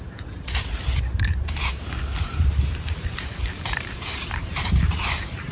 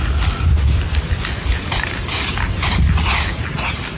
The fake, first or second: first